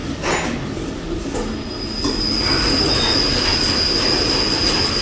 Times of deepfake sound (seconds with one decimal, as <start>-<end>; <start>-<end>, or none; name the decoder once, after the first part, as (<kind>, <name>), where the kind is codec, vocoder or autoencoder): none